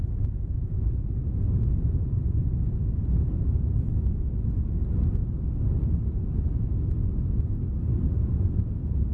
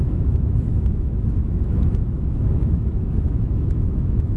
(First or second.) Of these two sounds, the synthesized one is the second